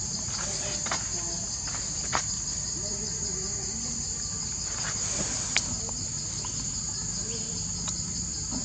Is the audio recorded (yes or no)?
yes